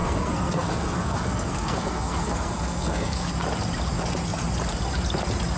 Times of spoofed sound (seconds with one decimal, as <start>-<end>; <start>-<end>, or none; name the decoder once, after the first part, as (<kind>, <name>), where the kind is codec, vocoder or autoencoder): 0.0-3.3 (codec, SNAC)